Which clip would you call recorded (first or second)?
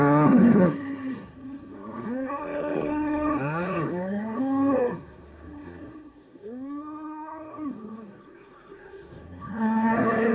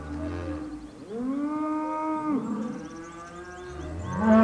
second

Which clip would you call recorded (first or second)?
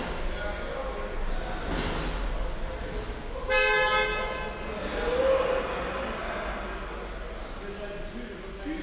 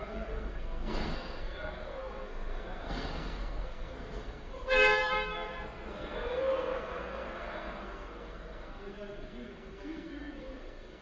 first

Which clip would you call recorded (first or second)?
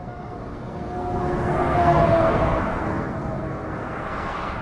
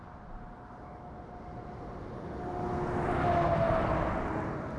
second